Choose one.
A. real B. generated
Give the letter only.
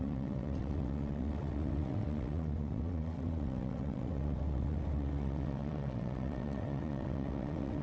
B